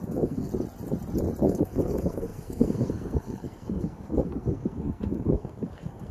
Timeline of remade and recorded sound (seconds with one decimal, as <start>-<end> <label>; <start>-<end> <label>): 0.0-0.5 remade; 0.5-1.4 recorded; 1.4-6.1 remade